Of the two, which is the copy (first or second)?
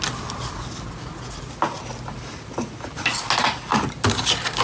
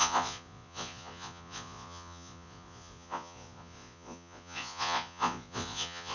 second